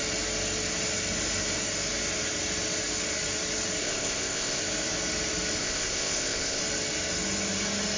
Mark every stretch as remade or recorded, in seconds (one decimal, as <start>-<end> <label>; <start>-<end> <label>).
0.0-3.8 recorded; 3.8-4.6 remade; 4.6-5.6 recorded; 5.6-6.6 remade; 6.6-8.0 recorded